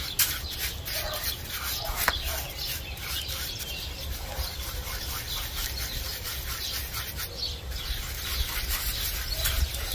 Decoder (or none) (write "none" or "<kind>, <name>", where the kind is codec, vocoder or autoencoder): none